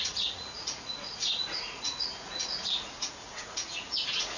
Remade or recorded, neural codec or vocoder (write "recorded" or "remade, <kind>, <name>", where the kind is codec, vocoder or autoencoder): remade, vocoder, Vocos